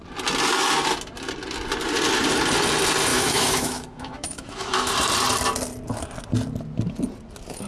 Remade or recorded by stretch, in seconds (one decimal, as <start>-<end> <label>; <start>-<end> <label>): 0.0-3.1 recorded; 3.1-4.9 remade; 4.9-7.7 recorded